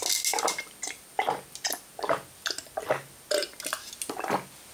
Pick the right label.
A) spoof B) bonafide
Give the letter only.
B